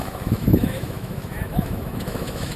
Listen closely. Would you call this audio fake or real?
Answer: fake